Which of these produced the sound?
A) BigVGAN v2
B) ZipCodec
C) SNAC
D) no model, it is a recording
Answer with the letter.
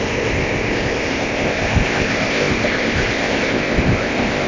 B